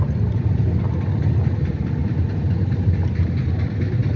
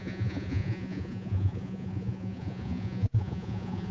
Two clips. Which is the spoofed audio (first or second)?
second